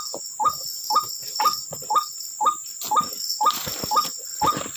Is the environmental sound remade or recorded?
recorded